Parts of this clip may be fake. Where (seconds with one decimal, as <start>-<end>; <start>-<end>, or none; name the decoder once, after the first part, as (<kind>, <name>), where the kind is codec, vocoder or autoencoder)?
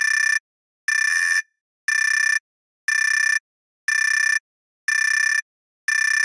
1.1-1.6 (vocoder, BigVGAN v2)